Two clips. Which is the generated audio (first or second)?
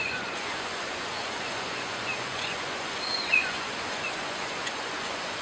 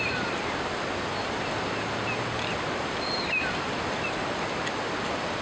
first